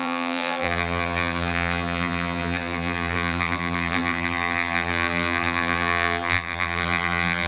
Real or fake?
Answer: fake